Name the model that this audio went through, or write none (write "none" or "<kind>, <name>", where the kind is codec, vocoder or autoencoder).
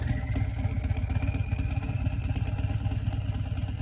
none